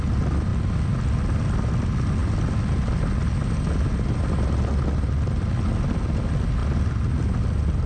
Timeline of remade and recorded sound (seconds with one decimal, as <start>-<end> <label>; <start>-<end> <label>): 0.0-7.9 recorded